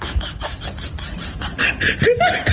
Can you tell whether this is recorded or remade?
recorded